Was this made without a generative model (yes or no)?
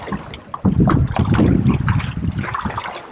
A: yes